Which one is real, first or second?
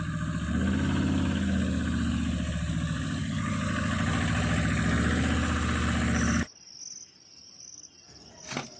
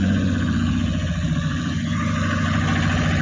first